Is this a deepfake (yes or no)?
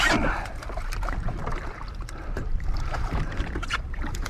yes